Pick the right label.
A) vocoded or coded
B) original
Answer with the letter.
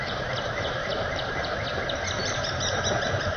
A